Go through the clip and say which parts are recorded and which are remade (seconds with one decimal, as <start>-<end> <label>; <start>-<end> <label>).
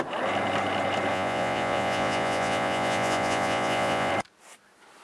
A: 0.0-1.1 recorded; 1.1-4.1 remade; 4.1-5.0 recorded